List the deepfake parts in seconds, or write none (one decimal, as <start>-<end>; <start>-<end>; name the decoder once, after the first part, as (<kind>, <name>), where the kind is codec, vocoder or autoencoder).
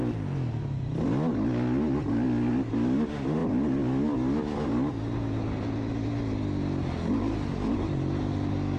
none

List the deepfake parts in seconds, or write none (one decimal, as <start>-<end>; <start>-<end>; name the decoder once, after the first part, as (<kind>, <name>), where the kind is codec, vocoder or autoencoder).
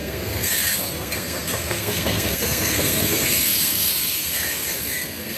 0.0-5.4 (codec, SNAC)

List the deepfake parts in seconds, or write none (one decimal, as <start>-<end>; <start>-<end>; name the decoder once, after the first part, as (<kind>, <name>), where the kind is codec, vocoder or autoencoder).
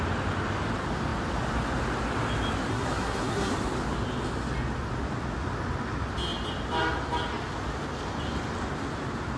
2.7-3.5 (codec, SNAC)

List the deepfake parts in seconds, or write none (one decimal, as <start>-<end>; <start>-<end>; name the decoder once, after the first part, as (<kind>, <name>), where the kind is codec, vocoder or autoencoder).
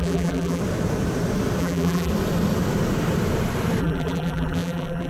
0.0-0.6 (vocoder, BigVGAN v2); 1.6-2.1; 3.8-5.1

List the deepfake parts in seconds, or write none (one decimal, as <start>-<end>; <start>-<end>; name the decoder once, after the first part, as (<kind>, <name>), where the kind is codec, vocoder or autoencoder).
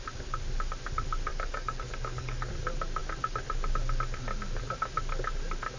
1.3-2.5 (codec, DAC)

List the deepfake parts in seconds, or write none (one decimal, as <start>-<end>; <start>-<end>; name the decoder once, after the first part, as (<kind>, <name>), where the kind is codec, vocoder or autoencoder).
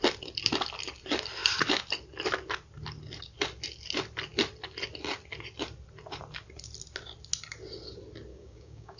8.3-9.0 (codec, DAC)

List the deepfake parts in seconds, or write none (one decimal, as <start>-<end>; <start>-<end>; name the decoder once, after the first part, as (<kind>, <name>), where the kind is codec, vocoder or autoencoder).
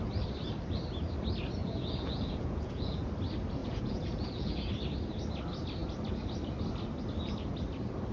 1.6-3.1 (vocoder, Vocos); 3.6-4.7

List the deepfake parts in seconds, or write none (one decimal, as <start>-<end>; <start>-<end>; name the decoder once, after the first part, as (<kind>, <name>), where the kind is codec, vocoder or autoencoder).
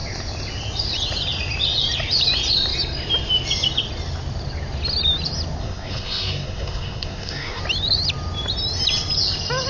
5.6-7.6 (codec, SNAC)